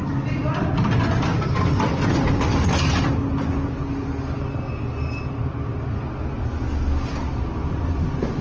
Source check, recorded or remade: recorded